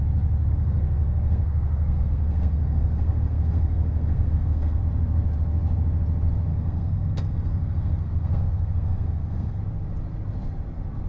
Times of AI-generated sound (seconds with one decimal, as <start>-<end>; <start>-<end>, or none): 0.5-4.8; 6.5-9.6

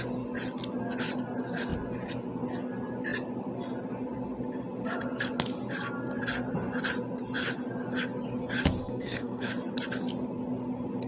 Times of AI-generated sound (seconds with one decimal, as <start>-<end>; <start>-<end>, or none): 8.8-9.5

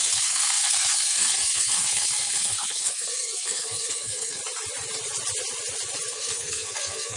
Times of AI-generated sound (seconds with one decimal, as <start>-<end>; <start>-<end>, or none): 0.0-4.4; 6.1-7.2

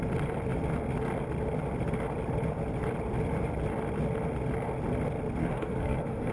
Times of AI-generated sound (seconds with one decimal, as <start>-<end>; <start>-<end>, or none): 5.4-6.3

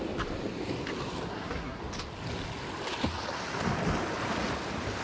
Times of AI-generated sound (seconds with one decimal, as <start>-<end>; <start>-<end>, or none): 1.3-1.8

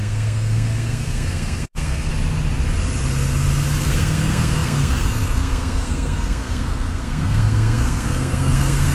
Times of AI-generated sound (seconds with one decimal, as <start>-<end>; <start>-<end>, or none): 0.0-2.1; 3.8-8.9

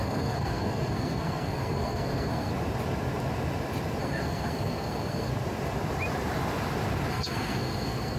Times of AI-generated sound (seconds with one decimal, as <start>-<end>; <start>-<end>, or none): 0.0-2.5; 4.0-5.3; 7.1-8.2